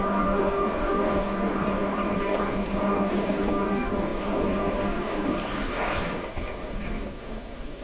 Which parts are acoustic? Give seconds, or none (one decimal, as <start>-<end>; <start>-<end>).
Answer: none